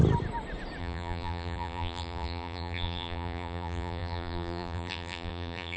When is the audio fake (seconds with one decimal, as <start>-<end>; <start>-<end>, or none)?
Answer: 0.8-5.8